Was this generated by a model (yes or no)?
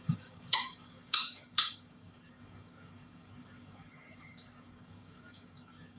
yes